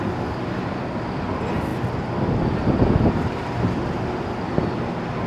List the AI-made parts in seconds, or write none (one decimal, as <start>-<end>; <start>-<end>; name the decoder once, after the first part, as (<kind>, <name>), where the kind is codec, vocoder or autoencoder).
none